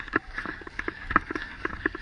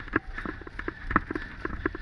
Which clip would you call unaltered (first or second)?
second